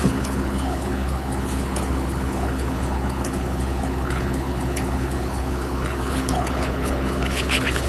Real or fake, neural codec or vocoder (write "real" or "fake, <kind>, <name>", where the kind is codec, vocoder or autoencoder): fake, codec, HILCodec